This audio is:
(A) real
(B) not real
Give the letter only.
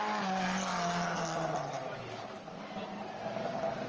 A